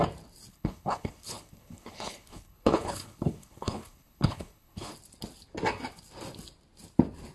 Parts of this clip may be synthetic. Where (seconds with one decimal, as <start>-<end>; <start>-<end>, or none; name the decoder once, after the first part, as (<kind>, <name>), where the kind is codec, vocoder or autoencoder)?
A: 0.5-4.9 (codec, HILCodec)